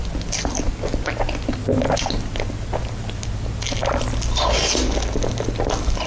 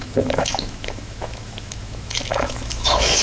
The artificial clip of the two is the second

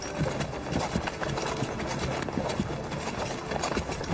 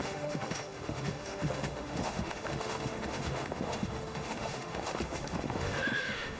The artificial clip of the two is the second